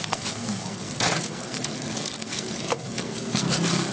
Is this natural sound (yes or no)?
no